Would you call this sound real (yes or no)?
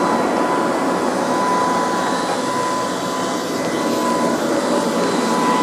yes